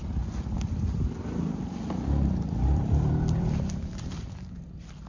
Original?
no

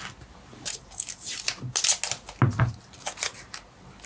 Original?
yes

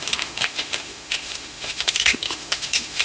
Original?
no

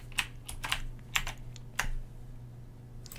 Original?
yes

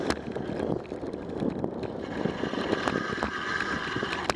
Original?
yes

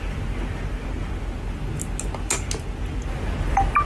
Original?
yes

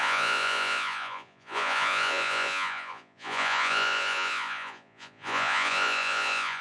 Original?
no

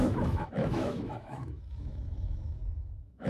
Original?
no